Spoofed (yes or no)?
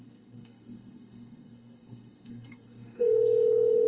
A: yes